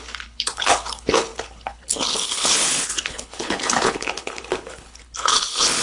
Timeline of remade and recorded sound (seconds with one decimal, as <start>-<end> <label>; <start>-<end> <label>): 0.0-5.8 remade